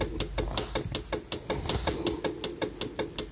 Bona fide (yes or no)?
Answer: yes